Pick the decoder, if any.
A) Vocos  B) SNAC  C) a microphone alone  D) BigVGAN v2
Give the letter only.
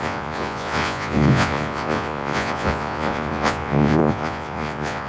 A